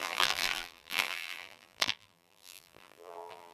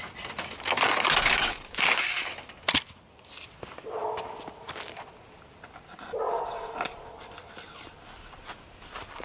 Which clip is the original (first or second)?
second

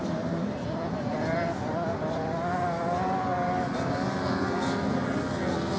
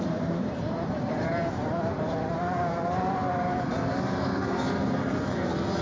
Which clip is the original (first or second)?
first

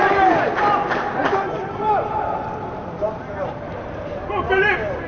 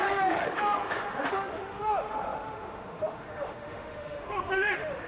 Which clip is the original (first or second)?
first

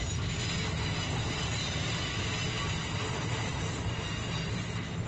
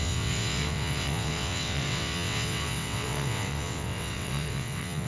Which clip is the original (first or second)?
first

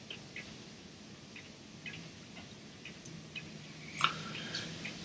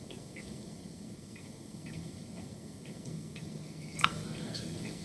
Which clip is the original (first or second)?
first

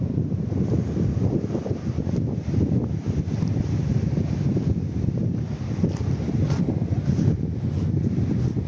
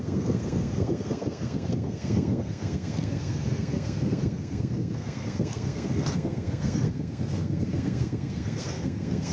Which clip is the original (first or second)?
first